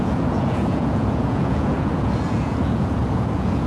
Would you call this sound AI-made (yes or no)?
yes